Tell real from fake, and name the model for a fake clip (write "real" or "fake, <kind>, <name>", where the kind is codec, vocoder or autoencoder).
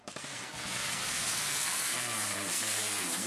fake, codec, SNAC